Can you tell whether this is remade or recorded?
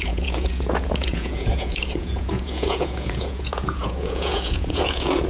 remade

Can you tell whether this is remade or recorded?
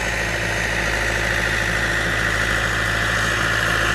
recorded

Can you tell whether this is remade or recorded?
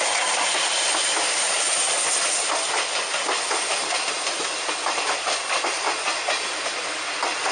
recorded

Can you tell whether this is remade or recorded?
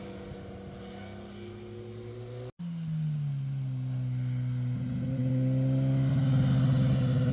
recorded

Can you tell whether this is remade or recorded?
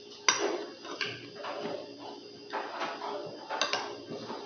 recorded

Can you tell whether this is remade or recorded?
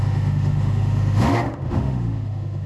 remade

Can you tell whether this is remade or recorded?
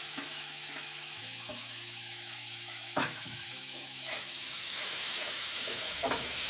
remade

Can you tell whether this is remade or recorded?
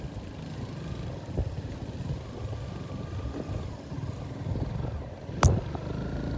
recorded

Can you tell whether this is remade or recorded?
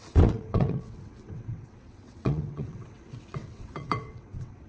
remade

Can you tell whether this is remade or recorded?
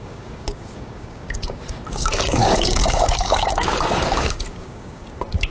remade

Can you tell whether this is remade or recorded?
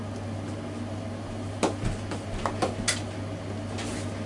recorded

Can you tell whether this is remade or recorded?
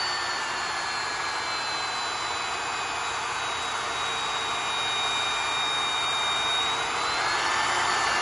recorded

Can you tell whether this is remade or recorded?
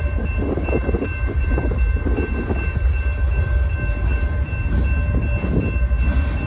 recorded